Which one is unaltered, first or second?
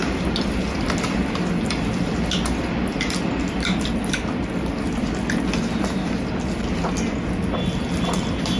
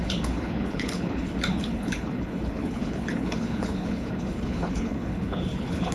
first